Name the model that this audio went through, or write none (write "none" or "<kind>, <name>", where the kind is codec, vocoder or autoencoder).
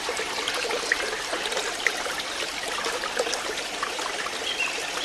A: none